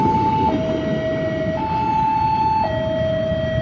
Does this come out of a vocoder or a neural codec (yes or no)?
no